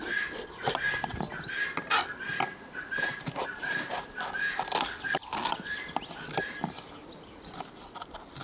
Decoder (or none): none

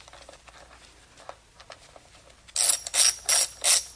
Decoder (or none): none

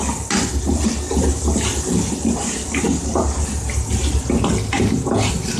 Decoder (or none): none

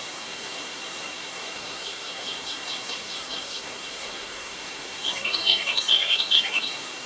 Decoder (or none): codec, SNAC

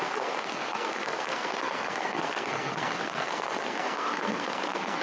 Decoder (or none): codec, SNAC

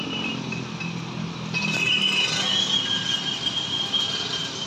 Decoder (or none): none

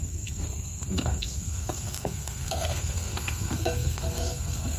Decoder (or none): codec, SNAC